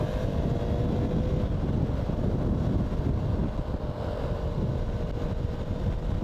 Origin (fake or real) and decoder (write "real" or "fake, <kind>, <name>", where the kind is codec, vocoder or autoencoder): real